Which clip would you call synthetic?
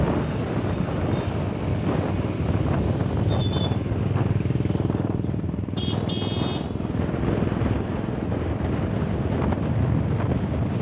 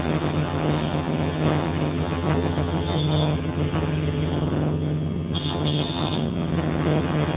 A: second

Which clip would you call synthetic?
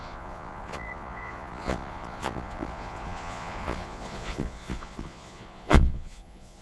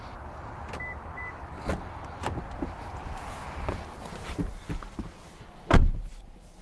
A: first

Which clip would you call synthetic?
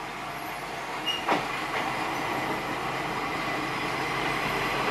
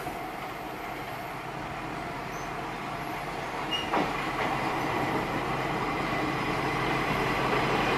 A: second